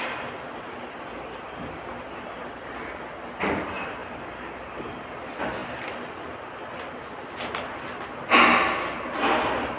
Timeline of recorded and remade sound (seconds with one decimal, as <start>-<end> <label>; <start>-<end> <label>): 0.0-9.8 recorded